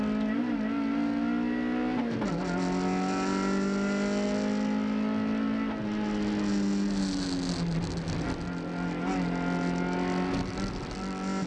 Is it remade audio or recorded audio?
recorded